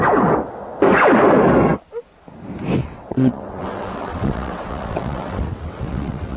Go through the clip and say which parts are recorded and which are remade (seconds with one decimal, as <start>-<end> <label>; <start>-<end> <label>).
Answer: 0.0-2.8 recorded; 2.8-6.4 remade